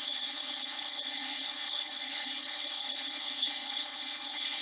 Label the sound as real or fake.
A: fake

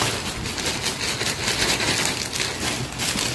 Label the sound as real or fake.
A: real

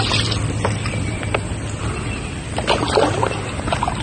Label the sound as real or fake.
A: real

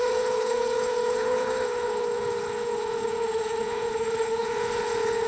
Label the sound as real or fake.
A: fake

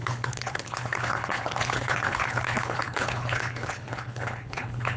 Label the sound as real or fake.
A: fake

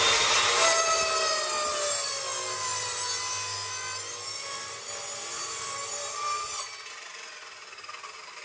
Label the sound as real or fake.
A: real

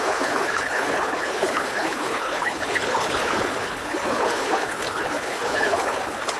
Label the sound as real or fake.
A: fake